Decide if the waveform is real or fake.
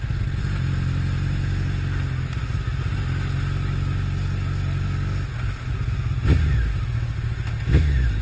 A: real